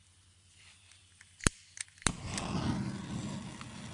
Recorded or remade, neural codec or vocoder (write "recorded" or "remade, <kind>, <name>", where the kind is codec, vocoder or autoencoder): recorded